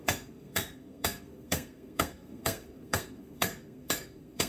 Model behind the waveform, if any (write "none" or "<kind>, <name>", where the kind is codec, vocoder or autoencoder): codec, SNAC